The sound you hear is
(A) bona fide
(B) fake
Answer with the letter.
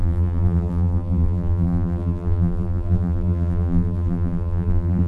B